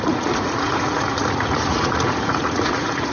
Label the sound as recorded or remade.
remade